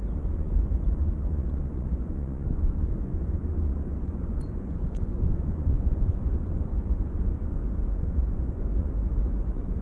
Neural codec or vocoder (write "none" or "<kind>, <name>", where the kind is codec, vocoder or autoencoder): vocoder, Vocos